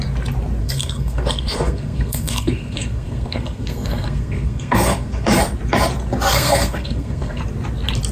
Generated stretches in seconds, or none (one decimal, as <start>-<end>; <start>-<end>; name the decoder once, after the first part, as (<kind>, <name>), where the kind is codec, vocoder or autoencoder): 0.6-5.4 (codec, SNAC); 6.3-7.4